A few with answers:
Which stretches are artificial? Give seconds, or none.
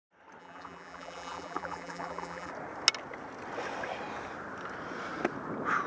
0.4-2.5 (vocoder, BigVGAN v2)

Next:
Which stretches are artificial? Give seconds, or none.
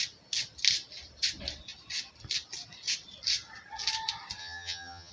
4.4-5.1 (vocoder, HiFi-GAN)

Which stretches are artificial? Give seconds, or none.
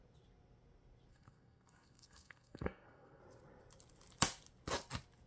1.1-3.2 (codec, SNAC)